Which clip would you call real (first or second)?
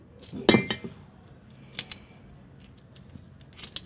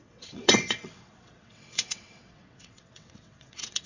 first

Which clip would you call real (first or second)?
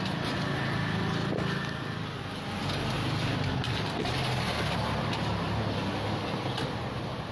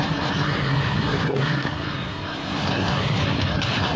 first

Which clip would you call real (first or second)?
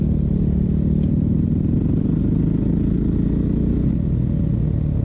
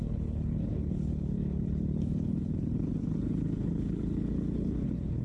first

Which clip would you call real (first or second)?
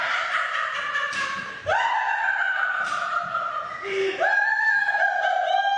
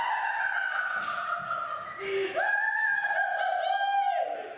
second